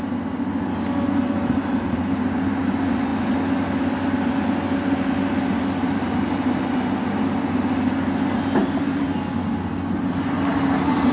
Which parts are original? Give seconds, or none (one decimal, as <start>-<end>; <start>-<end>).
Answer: 0.0-11.1